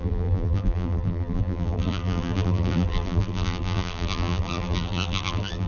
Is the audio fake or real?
fake